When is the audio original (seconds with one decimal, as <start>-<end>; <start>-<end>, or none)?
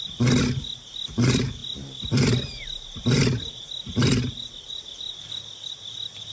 0.0-6.3